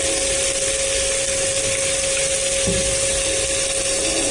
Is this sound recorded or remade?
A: recorded